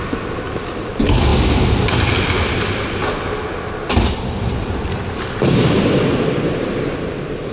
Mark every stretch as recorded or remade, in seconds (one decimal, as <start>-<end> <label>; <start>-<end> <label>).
0.0-7.5 recorded